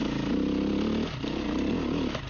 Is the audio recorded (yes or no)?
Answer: yes